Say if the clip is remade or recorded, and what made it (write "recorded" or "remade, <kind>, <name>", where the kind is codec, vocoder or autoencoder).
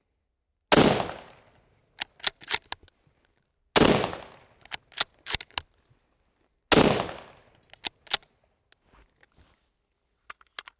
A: recorded